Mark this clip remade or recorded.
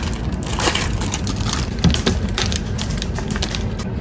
recorded